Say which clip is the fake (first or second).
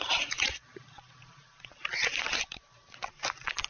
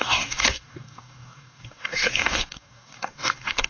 second